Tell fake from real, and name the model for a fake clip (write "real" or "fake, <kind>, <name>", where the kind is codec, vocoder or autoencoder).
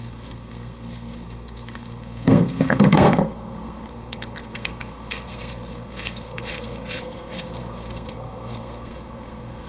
fake, codec, SNAC